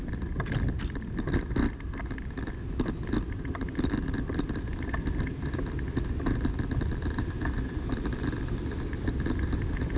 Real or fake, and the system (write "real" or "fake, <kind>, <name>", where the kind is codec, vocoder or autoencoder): real